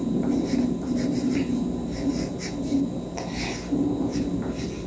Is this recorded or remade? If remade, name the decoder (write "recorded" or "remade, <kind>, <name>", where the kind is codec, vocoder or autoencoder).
recorded